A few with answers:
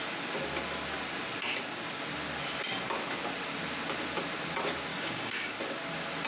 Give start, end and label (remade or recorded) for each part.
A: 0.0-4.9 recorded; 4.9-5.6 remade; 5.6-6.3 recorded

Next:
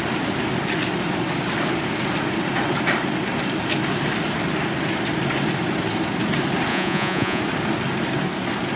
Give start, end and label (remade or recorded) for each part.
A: 0.0-6.7 recorded; 6.7-7.4 remade; 7.4-8.8 recorded